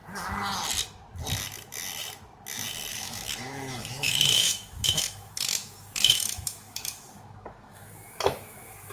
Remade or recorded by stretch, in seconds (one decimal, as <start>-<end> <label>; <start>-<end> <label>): 0.0-2.9 recorded; 2.9-8.9 remade